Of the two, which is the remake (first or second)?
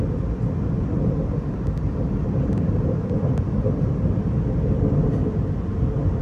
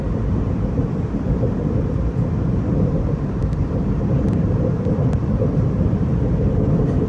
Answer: second